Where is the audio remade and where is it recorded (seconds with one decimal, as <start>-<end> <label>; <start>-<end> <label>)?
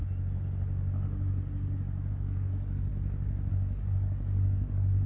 0.0-2.1 recorded; 2.1-2.9 remade; 2.9-3.5 recorded; 3.5-5.1 remade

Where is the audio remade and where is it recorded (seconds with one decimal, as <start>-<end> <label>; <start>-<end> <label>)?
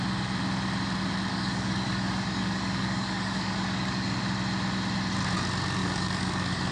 0.0-1.3 recorded; 1.3-4.2 remade; 4.2-5.8 recorded; 5.8-6.7 remade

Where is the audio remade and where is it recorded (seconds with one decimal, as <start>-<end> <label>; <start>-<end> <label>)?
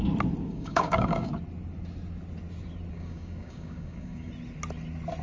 0.0-0.5 recorded; 0.5-1.3 remade; 1.3-2.9 recorded; 2.9-4.3 remade; 4.3-5.2 recorded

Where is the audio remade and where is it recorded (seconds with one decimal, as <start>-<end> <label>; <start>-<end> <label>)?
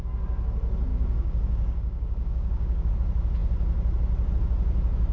0.0-0.9 recorded; 0.9-2.9 remade; 2.9-5.1 recorded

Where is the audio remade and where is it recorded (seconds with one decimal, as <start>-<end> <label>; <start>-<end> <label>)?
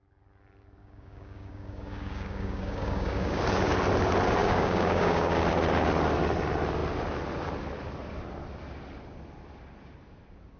0.0-0.8 recorded; 0.8-3.4 remade; 3.4-4.4 recorded; 4.4-5.4 remade; 5.4-10.6 recorded